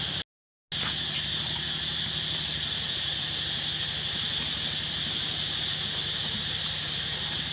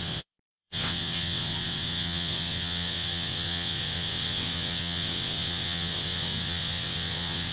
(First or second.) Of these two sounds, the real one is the first